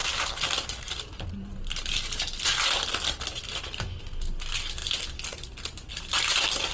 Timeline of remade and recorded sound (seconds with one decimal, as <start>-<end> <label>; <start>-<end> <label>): 0.0-6.7 recorded